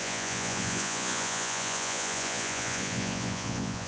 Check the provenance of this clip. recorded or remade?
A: remade